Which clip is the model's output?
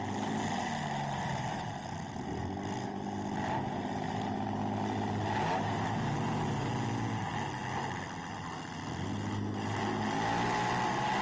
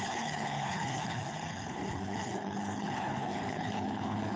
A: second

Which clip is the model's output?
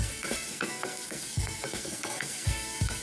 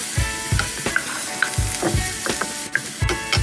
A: first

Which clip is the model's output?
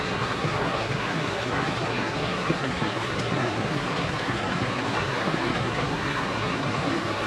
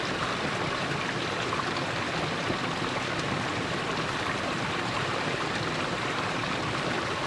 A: first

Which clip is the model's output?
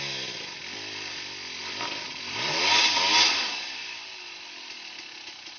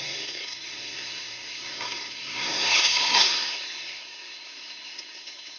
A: second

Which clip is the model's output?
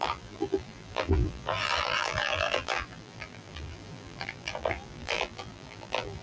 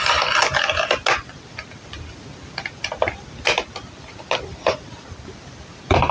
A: first